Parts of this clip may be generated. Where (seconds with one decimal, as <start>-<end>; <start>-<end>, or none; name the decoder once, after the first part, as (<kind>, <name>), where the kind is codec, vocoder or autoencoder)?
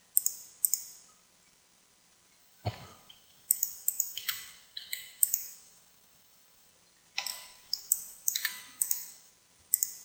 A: 2.4-6.7 (codec, DAC); 7.3-9.3